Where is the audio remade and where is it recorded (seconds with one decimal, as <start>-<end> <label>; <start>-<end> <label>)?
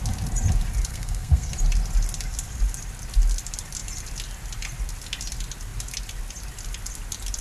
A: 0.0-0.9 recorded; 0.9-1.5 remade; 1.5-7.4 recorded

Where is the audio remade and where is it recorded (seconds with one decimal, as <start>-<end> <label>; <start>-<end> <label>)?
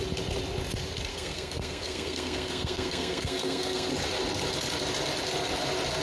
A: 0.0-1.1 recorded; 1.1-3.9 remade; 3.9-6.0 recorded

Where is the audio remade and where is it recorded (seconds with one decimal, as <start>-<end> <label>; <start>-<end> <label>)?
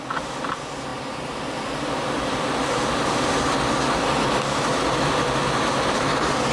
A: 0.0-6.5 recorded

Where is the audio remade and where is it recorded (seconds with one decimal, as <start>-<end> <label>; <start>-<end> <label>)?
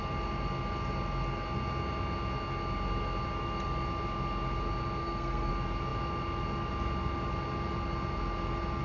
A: 0.0-5.0 recorded; 5.0-5.5 remade; 5.5-8.8 recorded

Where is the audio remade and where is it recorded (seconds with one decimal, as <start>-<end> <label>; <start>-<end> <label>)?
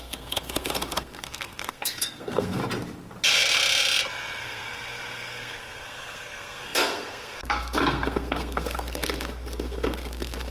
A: 0.0-2.6 remade; 2.6-4.4 recorded; 4.4-10.5 remade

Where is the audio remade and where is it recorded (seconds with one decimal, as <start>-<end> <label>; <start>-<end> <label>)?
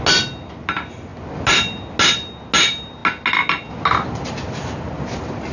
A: 0.0-5.5 recorded